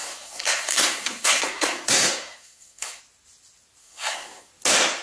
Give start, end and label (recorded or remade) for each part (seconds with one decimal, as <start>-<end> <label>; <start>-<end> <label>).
0.0-3.0 remade; 3.0-3.8 recorded; 3.8-4.5 remade; 4.5-5.0 recorded